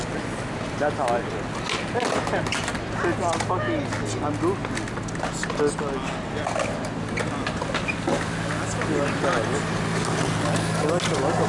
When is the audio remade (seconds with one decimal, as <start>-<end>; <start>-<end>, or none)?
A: none